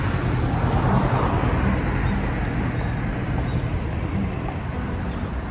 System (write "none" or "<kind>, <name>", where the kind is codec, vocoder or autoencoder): none